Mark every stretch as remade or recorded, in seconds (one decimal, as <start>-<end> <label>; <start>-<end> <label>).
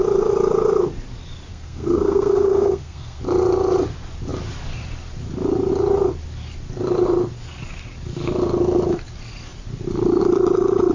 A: 0.0-1.5 recorded; 1.5-3.2 remade; 3.2-10.9 recorded